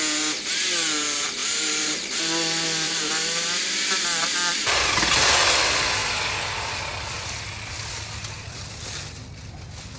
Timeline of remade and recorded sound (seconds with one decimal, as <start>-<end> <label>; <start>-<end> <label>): 0.0-1.4 recorded; 1.4-4.9 remade; 4.9-6.0 recorded; 6.0-8.7 remade; 8.7-10.0 recorded